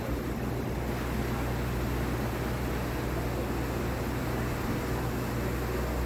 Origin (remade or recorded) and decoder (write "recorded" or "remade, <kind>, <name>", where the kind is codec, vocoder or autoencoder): recorded